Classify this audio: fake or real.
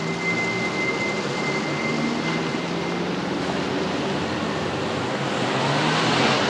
real